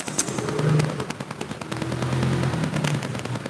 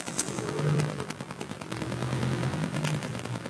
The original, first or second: first